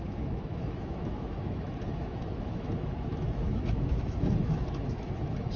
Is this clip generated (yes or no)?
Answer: yes